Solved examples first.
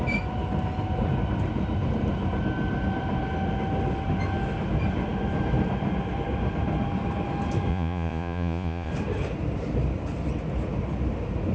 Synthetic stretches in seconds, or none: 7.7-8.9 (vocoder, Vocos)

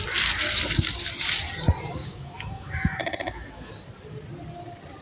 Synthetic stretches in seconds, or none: 2.0-3.7 (autoencoder, DAC-VAE)

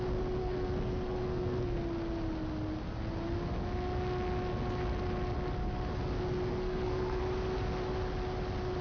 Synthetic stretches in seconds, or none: 0.4-1.8 (codec, SNAC); 6.5-7.2

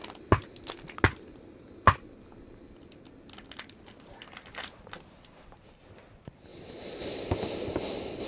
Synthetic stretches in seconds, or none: 1.3-2.8 (vocoder, BigVGAN v2); 6.5-7.3